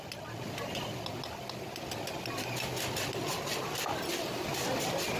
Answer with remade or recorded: recorded